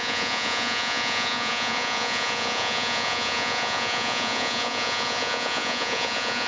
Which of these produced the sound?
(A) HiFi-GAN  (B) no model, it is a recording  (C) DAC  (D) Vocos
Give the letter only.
D